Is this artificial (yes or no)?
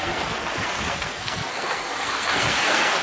yes